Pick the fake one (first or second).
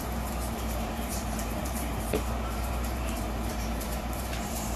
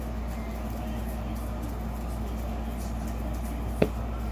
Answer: first